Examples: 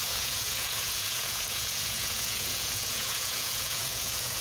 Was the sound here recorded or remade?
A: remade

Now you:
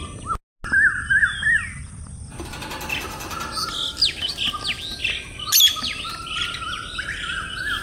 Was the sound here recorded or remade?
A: recorded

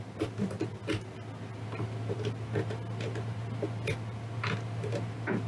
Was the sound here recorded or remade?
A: recorded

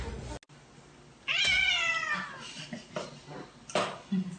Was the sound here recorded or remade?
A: recorded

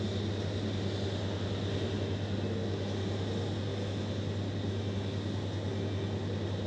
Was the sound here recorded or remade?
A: recorded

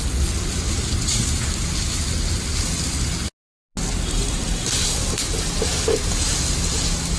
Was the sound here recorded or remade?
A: recorded